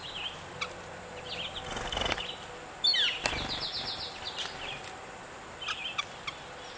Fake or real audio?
real